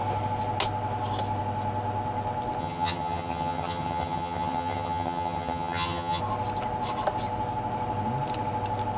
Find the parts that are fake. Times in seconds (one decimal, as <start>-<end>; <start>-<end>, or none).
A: 2.6-6.2